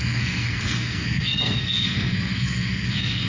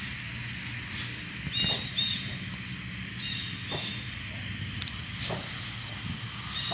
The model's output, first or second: first